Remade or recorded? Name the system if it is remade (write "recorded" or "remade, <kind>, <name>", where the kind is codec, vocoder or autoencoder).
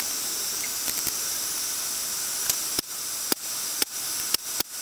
recorded